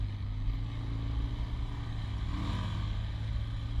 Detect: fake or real real